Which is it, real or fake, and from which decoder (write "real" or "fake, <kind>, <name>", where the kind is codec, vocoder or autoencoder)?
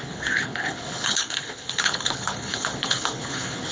fake, codec, HILCodec